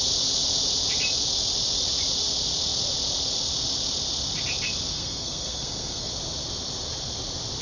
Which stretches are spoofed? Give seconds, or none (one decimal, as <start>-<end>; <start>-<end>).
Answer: 4.9-6.1